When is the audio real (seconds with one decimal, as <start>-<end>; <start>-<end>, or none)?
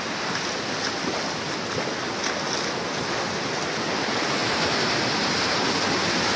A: 0.0-6.4